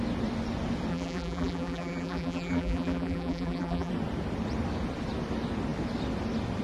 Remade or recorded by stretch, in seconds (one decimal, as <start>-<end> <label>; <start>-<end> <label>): 0.0-0.9 recorded; 0.9-3.9 remade; 3.9-6.6 recorded